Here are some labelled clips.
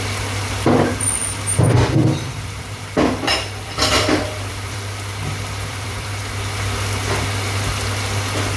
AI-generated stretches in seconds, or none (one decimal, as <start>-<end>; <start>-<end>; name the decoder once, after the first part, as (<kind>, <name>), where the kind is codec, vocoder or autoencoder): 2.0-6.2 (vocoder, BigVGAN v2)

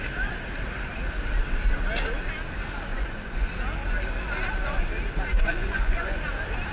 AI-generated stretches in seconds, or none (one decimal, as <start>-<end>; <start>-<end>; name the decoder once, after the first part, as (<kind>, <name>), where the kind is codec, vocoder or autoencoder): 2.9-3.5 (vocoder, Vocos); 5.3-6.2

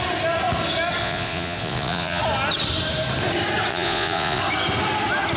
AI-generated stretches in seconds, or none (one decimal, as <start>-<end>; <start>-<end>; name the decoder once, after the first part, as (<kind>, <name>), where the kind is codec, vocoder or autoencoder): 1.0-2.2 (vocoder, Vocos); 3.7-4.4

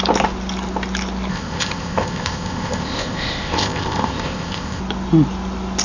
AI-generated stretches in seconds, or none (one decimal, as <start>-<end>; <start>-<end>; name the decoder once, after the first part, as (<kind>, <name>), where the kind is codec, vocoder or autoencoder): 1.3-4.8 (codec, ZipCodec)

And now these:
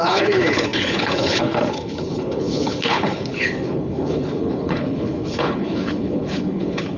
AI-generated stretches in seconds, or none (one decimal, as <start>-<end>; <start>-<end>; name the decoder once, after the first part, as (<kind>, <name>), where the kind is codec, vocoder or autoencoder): 0.0-7.0 (codec, HILCodec)

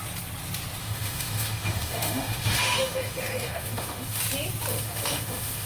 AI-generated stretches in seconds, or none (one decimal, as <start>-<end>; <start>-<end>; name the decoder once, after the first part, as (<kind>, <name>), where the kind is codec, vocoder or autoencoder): 0.8-4.2 (autoencoder, DAC-VAE); 4.7-5.7